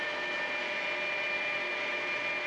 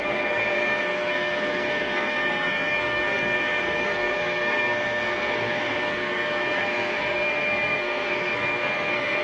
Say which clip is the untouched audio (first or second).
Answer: first